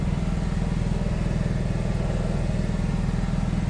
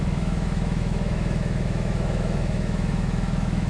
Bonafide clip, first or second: first